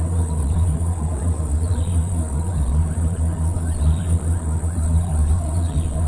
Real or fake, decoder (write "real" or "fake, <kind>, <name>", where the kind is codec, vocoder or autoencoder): fake, vocoder, Vocos